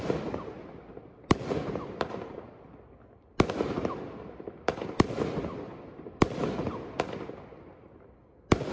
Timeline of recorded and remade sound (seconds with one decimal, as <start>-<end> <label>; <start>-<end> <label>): 0.0-8.7 recorded